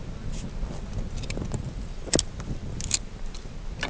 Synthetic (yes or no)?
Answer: no